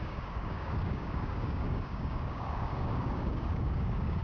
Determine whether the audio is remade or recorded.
remade